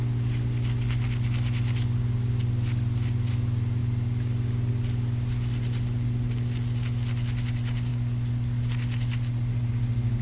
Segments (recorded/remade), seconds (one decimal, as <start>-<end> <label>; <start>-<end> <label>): 0.0-10.2 recorded